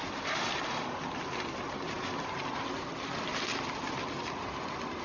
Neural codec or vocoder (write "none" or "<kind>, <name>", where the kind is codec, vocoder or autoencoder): none